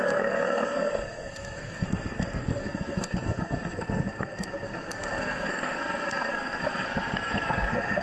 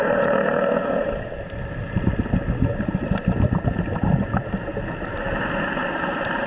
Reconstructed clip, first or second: first